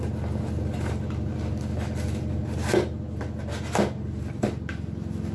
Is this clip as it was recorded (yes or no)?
yes